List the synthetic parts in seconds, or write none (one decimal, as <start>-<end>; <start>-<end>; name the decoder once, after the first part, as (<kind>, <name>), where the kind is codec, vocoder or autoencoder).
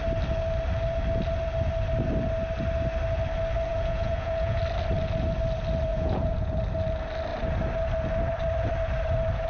3.7-4.6 (vocoder, Vocos); 5.9-6.6